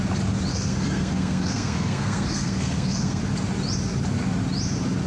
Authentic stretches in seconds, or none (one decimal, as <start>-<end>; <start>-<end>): 0.0-0.5; 3.2-5.1